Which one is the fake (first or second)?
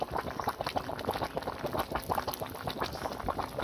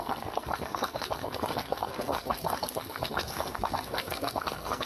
second